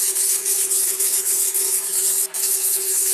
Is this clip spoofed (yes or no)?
yes